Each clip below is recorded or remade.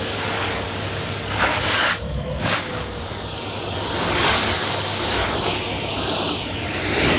remade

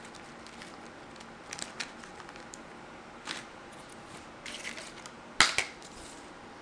recorded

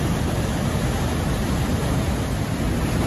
recorded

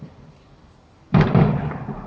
remade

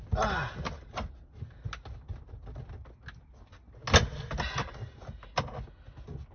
recorded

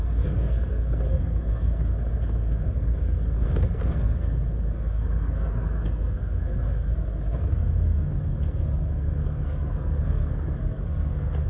remade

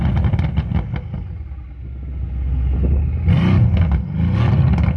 recorded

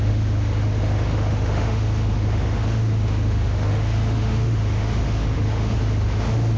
remade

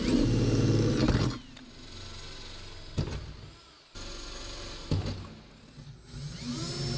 recorded